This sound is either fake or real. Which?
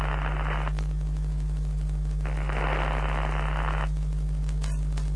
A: real